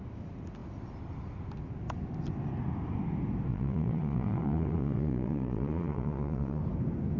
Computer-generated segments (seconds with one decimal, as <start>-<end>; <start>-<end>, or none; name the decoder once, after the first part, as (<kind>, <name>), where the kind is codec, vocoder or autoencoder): 3.5-6.6 (vocoder, Vocos)